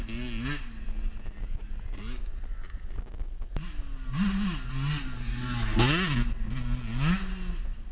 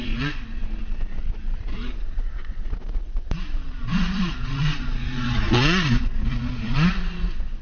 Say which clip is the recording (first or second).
first